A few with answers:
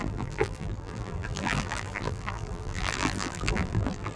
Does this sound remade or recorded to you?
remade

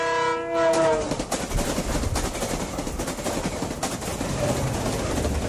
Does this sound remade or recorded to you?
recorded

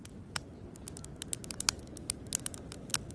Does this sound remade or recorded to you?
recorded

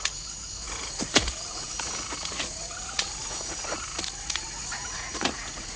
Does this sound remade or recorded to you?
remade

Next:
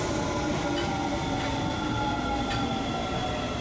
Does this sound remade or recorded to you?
recorded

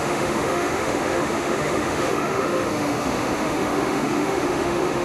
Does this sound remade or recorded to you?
remade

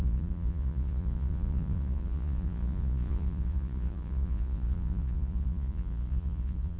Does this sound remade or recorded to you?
remade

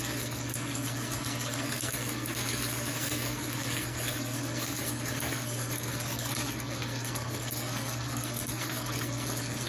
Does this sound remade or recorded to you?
remade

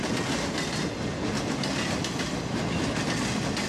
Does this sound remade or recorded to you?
recorded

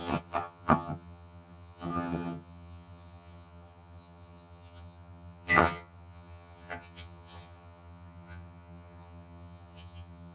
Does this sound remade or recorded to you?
remade